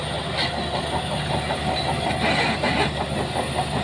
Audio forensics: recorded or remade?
recorded